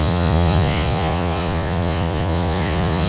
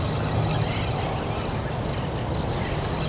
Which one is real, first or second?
second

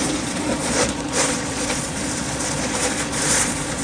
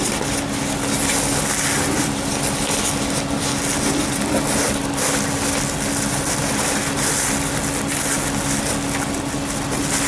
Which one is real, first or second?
second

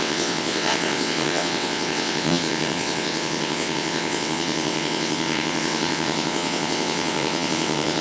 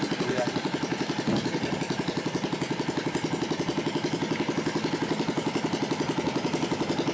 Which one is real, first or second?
second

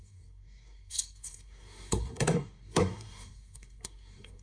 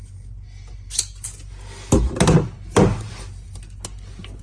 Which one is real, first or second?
second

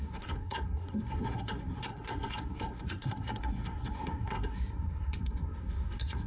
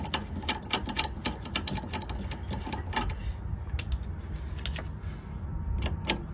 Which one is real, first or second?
second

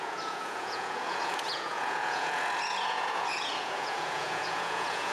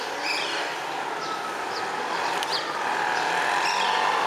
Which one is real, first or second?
second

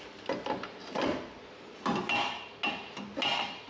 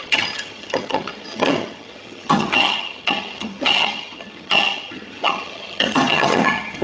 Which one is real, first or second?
first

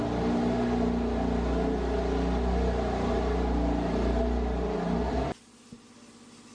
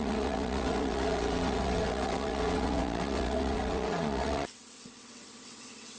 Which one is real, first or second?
first